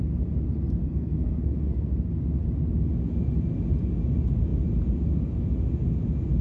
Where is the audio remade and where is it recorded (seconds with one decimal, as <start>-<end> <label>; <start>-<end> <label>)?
0.0-0.8 recorded; 0.8-1.9 remade; 1.9-6.4 recorded